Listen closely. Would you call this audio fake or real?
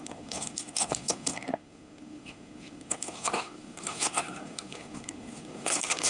fake